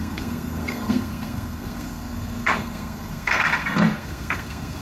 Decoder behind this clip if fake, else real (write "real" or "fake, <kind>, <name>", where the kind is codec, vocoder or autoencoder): fake, codec, SNAC